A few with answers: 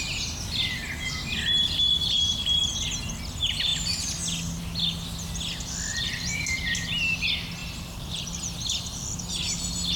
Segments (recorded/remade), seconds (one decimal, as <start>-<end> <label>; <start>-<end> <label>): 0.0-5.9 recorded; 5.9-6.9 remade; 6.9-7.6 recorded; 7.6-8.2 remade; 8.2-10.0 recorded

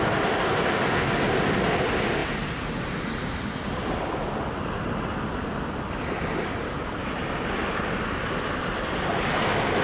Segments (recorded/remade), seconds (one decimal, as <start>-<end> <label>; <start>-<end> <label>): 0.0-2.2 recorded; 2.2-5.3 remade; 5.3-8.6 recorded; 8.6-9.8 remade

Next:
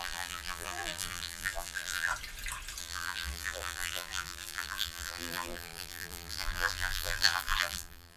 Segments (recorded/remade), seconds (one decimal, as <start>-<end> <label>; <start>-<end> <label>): 0.0-2.1 remade; 2.1-2.8 recorded; 2.8-8.2 remade

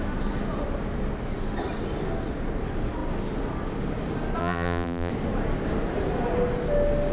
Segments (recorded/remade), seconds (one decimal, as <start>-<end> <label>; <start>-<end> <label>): 0.0-4.4 recorded; 4.4-5.1 remade; 5.1-7.1 recorded

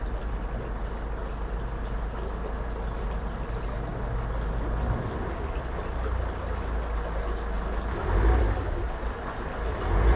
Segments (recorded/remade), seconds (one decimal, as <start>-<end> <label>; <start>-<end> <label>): 0.0-10.2 recorded

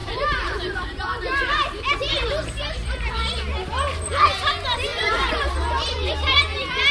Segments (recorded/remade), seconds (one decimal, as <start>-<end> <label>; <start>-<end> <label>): 0.0-3.1 remade; 3.1-4.9 recorded; 4.9-6.4 remade; 6.4-6.9 recorded

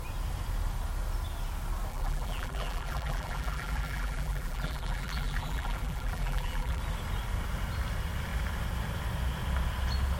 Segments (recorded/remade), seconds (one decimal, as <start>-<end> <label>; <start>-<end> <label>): 0.0-1.9 recorded; 1.9-6.8 remade; 6.8-10.2 recorded